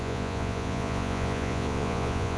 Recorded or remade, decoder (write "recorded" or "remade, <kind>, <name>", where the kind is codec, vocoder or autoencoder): remade, vocoder, Vocos